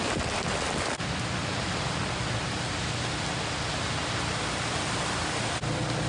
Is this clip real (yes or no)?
yes